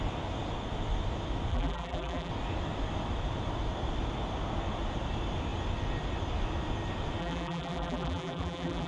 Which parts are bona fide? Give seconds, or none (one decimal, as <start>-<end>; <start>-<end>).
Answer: 0.0-1.5; 2.3-7.2